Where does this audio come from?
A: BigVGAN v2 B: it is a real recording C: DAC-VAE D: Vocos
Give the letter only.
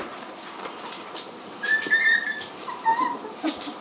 A